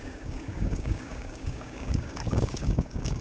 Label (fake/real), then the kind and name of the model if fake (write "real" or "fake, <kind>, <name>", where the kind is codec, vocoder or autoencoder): fake, codec, DAC